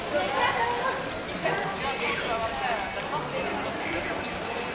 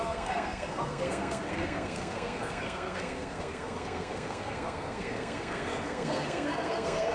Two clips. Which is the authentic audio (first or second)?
first